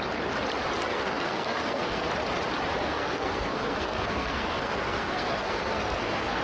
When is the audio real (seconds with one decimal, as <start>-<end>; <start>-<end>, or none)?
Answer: 0.0-0.9; 2.1-2.8